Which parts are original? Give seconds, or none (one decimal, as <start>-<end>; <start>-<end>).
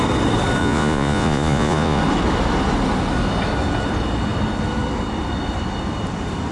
0.0-0.6; 2.0-6.5